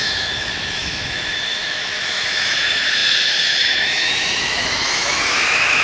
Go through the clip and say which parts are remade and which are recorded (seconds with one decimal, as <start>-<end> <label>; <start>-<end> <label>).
0.0-5.8 remade